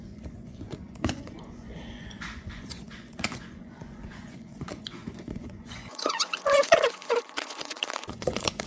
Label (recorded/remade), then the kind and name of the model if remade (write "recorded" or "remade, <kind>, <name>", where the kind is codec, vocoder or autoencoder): remade, vocoder, Vocos